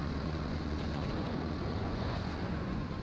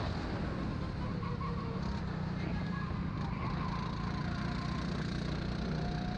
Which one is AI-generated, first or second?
first